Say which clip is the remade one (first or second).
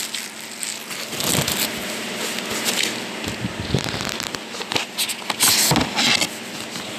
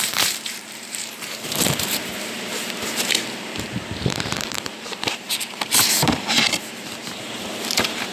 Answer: second